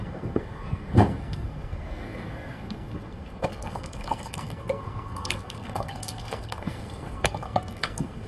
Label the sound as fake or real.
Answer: fake